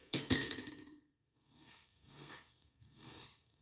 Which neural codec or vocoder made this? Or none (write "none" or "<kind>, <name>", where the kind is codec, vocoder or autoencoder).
codec, SNAC